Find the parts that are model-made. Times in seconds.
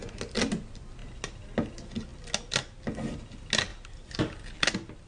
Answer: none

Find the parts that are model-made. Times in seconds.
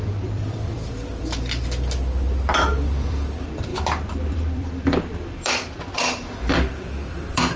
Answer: 0.0-1.6 (vocoder, BigVGAN v2); 2.6-3.7; 4.3-7.6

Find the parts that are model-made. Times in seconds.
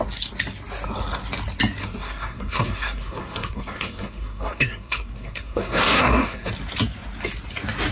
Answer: 1.8-6.5 (codec, SNAC)